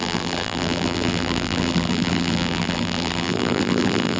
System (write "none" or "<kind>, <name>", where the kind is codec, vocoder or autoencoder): vocoder, BigVGAN v2